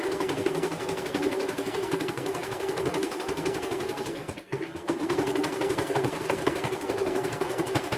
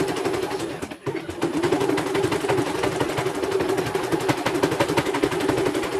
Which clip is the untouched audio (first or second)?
second